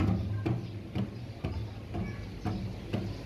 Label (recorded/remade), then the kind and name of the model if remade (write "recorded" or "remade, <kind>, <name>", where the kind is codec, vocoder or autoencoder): recorded